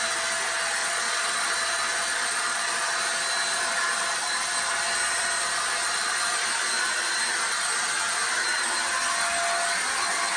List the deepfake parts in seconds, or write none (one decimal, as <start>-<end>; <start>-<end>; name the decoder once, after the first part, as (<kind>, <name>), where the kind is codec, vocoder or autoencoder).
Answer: 0.8-1.5 (vocoder, Vocos); 2.1-2.7